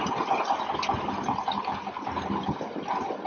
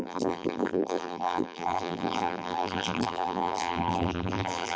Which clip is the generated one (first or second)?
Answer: second